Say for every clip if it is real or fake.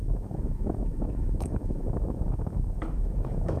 fake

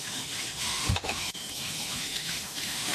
fake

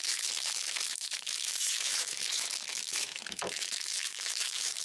fake